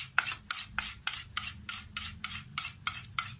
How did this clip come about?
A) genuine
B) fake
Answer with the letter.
A